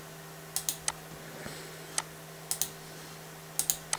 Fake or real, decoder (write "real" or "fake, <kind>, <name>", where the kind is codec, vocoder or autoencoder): real